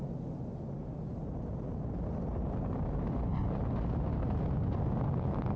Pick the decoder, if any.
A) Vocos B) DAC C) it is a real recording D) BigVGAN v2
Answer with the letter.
C